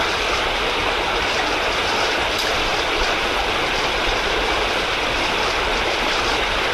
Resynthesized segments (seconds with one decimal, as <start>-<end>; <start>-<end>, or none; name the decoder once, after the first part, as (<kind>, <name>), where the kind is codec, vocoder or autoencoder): none